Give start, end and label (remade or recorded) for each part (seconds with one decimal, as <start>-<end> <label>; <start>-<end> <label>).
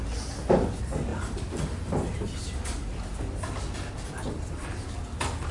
0.0-5.5 recorded